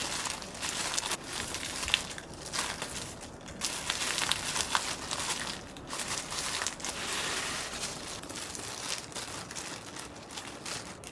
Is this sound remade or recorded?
recorded